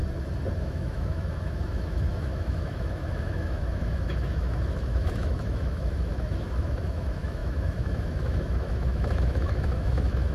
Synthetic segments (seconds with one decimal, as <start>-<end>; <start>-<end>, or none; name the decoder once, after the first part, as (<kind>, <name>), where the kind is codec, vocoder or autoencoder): 0.6-10.3 (autoencoder, DAC-VAE)